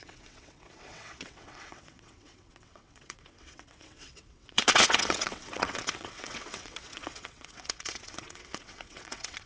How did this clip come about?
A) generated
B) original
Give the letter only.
A